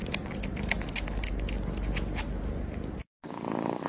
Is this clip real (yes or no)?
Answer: yes